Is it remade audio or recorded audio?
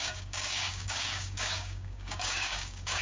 remade